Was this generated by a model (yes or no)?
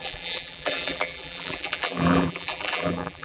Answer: yes